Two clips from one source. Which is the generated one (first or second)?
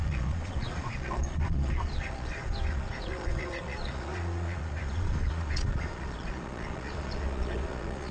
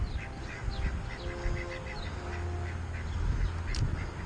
first